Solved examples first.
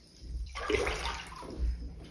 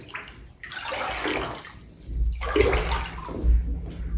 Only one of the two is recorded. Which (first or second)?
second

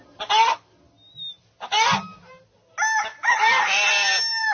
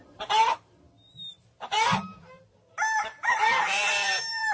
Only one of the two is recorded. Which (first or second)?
first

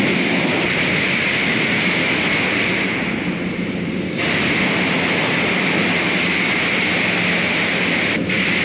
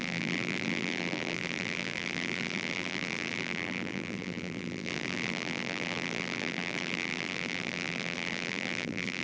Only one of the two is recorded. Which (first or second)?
first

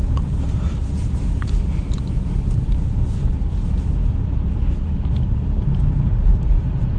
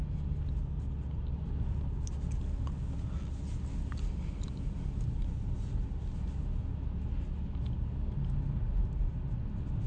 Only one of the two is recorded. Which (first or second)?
second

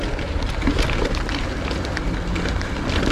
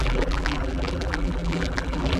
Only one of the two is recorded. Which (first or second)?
first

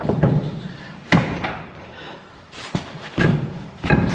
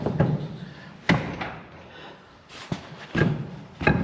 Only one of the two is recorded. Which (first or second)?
second